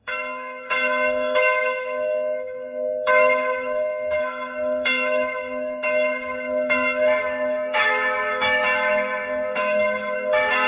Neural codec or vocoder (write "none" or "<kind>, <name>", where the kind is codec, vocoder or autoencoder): codec, DAC